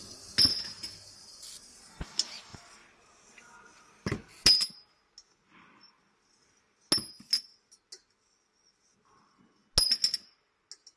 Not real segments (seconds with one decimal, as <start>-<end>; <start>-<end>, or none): none